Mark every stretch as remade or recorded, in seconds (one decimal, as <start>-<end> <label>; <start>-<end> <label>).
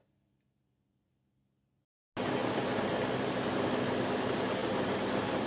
0.0-2.4 recorded; 2.4-3.7 remade; 3.7-4.6 recorded; 4.6-5.5 remade